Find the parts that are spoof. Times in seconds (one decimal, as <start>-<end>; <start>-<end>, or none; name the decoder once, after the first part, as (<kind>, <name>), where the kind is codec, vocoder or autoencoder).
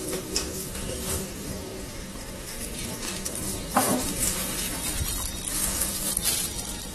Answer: 0.0-4.8 (codec, DAC); 5.5-6.1